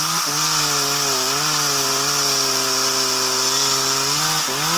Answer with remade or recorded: recorded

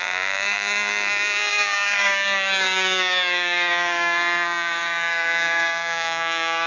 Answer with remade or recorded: remade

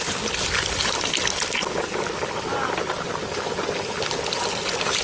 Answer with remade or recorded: recorded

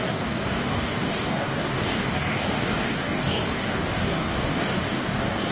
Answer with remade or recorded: remade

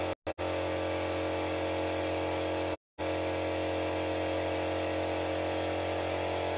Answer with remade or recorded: recorded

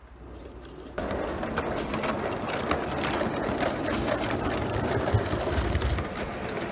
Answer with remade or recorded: recorded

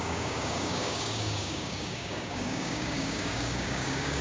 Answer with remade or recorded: remade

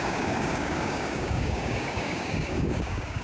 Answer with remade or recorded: remade